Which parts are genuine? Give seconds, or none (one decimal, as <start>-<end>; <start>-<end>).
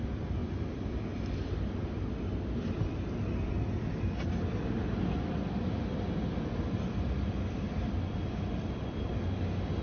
0.0-9.8